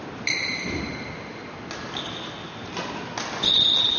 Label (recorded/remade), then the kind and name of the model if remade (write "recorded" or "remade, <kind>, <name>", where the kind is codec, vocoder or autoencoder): recorded